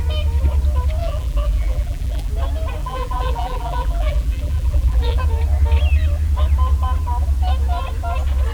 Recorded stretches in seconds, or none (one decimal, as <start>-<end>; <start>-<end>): 0.0-1.0; 2.3-2.8; 5.2-8.5